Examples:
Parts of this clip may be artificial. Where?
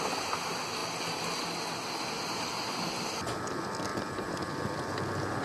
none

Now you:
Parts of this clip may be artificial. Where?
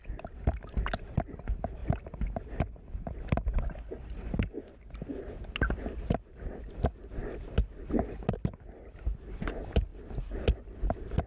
none